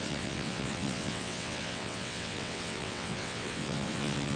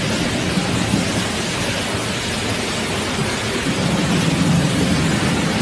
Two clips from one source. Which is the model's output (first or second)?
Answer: first